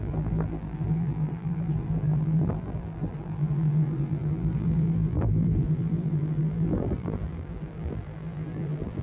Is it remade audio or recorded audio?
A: remade